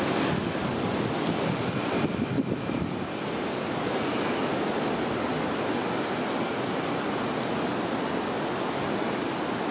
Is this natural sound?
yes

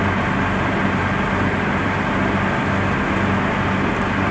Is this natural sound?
yes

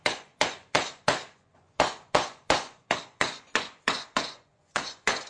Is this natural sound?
no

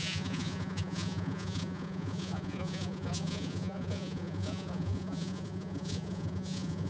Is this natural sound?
no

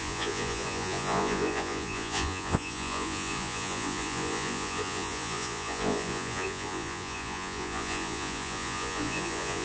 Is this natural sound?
no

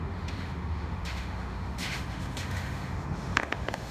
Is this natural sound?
no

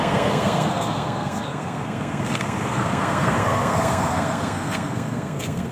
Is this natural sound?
no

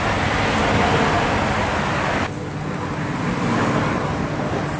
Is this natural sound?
yes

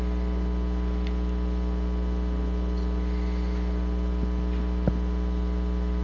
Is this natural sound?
yes